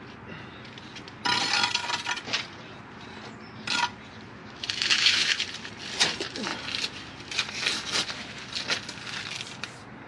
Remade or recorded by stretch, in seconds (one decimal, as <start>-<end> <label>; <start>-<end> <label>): 0.0-4.4 recorded; 4.4-5.4 remade; 5.4-10.1 recorded